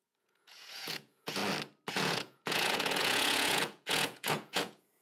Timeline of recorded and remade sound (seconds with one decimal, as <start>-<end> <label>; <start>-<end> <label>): 0.0-1.4 remade; 1.4-1.9 recorded; 1.9-5.0 remade